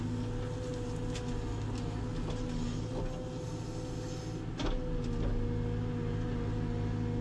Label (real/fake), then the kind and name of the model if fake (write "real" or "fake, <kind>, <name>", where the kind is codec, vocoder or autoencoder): real